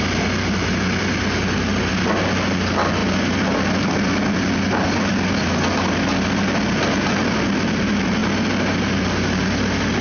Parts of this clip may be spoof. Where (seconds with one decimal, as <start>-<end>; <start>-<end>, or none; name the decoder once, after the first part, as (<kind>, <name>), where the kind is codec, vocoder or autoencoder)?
none